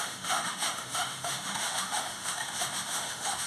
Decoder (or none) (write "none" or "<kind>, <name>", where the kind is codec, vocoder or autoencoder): autoencoder, DAC-VAE